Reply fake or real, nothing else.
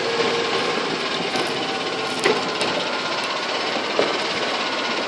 real